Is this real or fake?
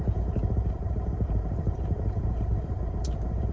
fake